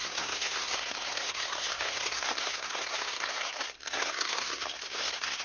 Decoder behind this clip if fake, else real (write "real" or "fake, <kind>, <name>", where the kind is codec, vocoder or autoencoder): fake, codec, SNAC